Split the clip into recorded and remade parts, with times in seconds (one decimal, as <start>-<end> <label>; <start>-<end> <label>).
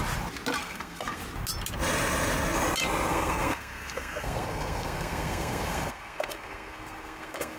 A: 0.0-0.6 recorded; 0.6-1.2 remade; 1.2-3.1 recorded; 3.1-7.6 remade